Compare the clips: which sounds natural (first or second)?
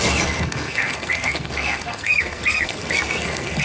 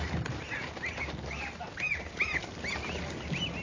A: second